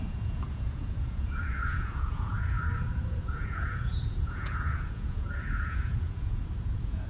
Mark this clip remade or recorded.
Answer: remade